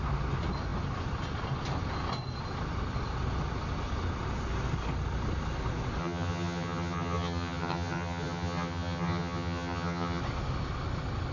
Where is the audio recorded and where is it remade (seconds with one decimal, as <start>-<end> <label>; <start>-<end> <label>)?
0.0-6.0 recorded; 6.0-10.2 remade; 10.2-11.3 recorded